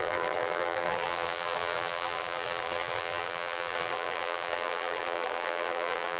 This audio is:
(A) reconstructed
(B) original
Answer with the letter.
A